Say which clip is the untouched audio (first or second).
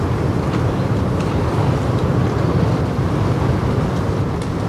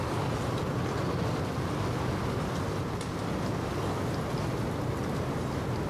second